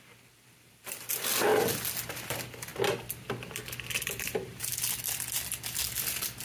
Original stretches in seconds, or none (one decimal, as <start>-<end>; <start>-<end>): 1.5-2.0; 2.7-3.9; 4.7-5.9